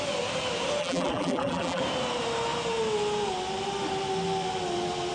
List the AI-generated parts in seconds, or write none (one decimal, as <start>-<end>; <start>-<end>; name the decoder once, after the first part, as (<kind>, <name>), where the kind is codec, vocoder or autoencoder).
0.8-1.8 (vocoder, BigVGAN v2)